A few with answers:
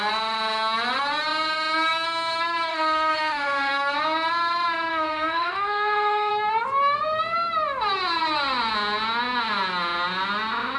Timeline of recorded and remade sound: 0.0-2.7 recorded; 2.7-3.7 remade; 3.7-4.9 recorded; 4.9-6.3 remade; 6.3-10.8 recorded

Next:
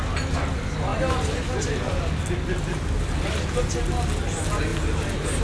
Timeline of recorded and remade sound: 0.0-5.4 recorded

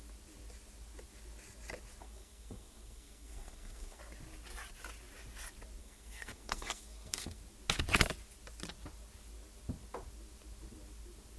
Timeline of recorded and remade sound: 0.0-2.0 recorded; 2.0-4.0 remade; 4.0-5.8 recorded; 5.8-7.4 remade; 7.4-11.4 recorded

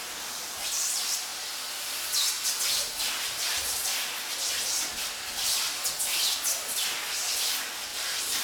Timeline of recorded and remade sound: 0.0-1.3 remade; 1.3-2.1 recorded; 2.1-3.8 remade; 3.8-7.4 recorded; 7.4-8.4 remade

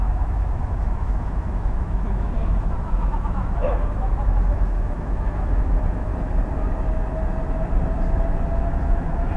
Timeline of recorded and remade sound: 0.0-6.1 remade; 6.1-8.6 recorded; 8.6-9.4 remade